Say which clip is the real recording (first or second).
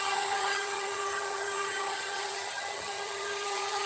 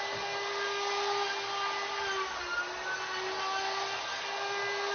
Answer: second